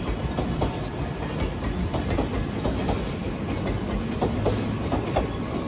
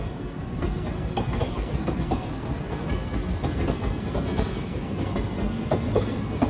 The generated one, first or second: second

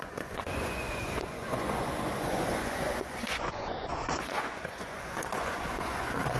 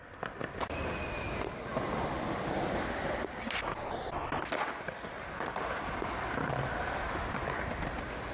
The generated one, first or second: first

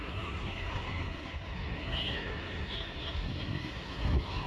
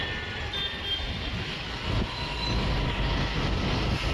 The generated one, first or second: first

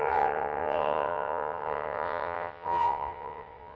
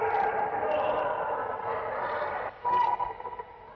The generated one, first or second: first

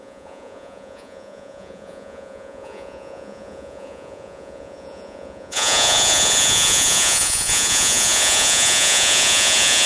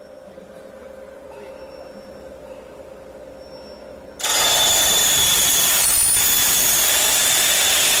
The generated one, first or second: first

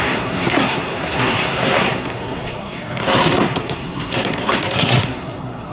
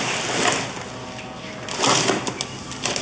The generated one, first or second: first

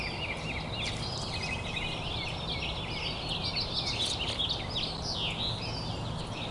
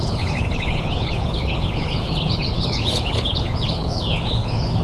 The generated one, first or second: second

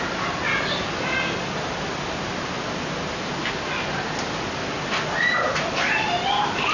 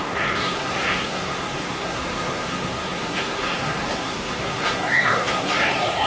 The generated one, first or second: second